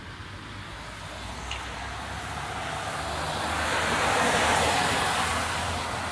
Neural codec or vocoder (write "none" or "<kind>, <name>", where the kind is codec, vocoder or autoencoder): none